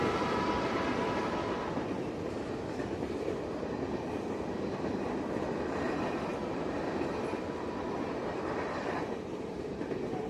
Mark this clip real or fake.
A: fake